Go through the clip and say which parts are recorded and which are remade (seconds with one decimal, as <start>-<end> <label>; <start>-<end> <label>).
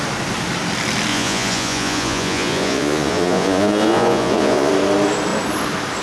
0.0-1.1 recorded; 1.1-4.7 remade; 4.7-6.0 recorded